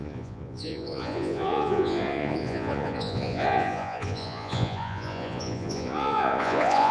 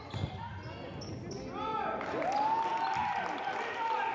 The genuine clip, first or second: second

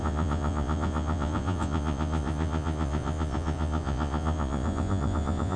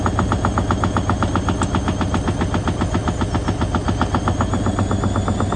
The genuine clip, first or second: second